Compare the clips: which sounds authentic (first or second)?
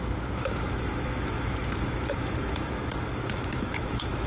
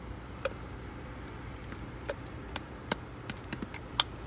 second